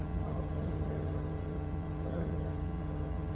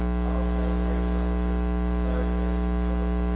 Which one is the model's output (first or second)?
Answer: first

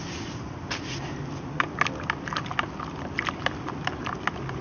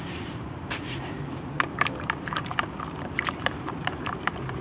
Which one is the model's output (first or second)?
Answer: second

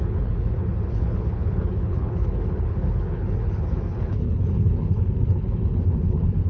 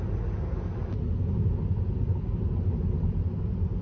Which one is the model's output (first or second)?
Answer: first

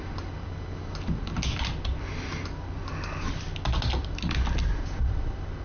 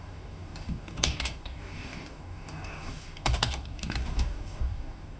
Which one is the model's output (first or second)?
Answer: second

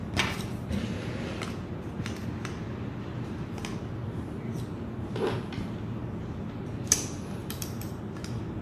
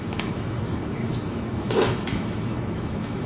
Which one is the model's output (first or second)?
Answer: second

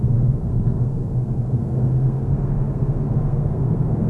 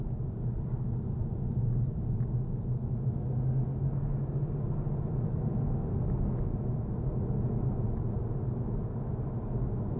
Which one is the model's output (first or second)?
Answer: first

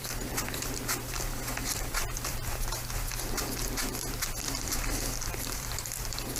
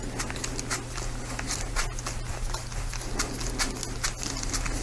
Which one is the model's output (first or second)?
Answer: first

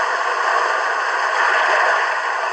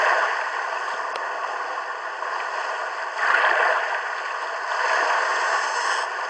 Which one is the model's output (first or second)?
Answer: first